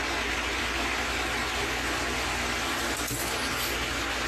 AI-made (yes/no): no